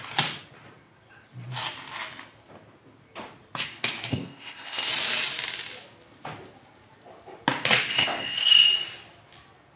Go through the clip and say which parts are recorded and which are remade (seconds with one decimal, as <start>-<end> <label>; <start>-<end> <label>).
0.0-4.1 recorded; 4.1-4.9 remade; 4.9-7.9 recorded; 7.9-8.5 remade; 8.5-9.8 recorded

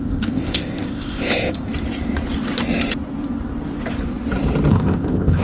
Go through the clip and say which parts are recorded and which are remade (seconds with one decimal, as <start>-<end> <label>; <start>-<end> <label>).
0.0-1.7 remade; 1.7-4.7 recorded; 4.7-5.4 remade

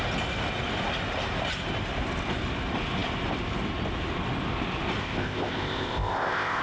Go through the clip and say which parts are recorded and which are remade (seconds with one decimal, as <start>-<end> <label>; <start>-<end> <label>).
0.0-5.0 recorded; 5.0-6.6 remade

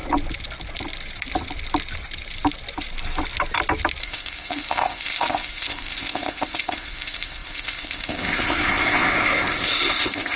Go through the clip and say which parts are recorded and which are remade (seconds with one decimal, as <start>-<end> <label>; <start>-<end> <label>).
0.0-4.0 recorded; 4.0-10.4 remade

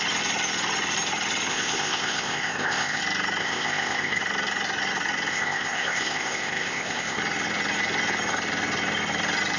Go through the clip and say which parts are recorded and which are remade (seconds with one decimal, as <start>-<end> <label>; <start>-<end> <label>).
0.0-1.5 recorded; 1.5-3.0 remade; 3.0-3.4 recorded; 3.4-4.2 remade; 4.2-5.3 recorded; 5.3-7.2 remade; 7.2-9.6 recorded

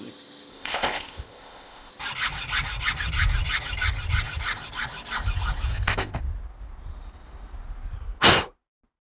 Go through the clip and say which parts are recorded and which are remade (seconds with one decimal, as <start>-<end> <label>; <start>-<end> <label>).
0.0-0.5 recorded; 0.5-1.9 remade; 1.9-5.7 recorded; 5.7-6.2 remade; 6.2-9.0 recorded

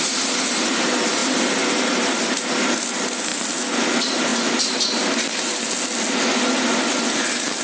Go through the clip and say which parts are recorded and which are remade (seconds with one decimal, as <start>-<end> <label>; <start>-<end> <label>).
0.0-7.6 recorded

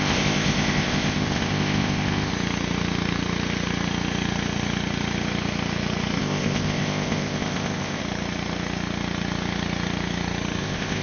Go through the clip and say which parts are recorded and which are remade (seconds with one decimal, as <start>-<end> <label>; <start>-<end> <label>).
0.0-2.3 remade; 2.3-6.2 recorded; 6.2-8.0 remade; 8.0-10.6 recorded; 10.6-11.0 remade